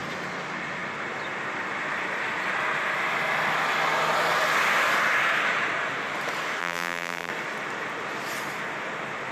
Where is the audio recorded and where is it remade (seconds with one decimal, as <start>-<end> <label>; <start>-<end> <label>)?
0.0-6.6 recorded; 6.6-7.3 remade; 7.3-9.3 recorded